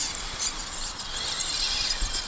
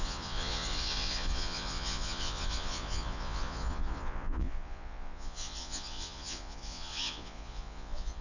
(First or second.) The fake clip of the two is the second